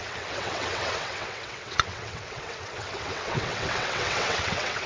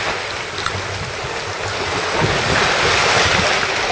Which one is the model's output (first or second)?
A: first